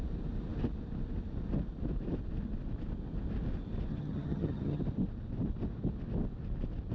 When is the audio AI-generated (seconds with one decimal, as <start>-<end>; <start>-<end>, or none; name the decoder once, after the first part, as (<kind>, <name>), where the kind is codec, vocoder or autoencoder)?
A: 3.9-4.8 (vocoder, HiFi-GAN)